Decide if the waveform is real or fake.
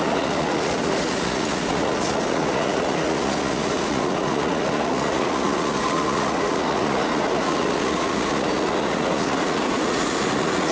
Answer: fake